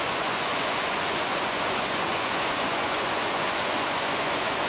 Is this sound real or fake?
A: fake